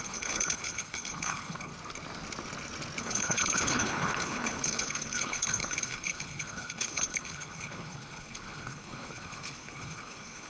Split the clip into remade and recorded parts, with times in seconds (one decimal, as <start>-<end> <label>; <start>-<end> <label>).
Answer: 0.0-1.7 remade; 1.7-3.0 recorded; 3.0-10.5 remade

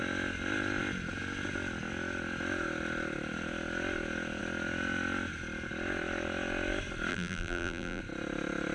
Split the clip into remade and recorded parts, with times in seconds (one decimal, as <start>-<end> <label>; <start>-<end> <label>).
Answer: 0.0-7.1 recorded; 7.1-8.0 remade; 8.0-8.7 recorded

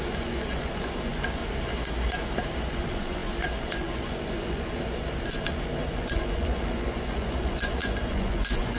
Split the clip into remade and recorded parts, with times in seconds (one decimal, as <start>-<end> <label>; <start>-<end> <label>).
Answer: 0.0-1.4 remade; 1.4-2.6 recorded; 2.6-8.8 remade